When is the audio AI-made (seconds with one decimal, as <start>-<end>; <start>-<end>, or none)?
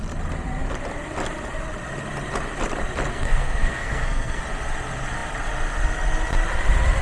3.1-4.4